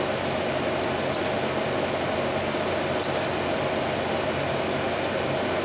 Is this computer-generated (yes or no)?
no